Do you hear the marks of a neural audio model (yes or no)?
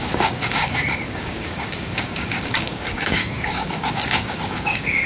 yes